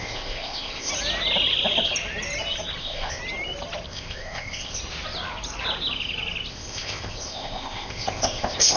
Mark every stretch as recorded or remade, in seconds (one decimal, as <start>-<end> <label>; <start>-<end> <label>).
0.0-0.9 remade; 0.9-2.8 recorded; 2.8-3.2 remade; 3.2-3.9 recorded; 3.9-4.8 remade; 4.8-6.5 recorded; 6.5-8.8 remade